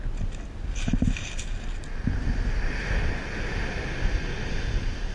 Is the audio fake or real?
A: real